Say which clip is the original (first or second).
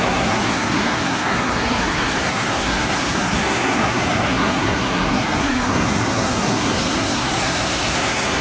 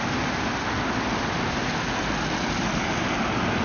second